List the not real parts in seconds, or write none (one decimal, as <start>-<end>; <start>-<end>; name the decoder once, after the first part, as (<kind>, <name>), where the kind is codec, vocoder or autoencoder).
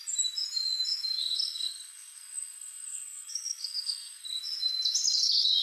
1.2-4.4 (codec, SNAC)